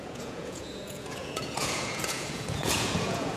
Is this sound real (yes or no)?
no